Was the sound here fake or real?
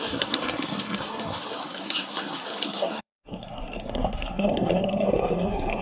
fake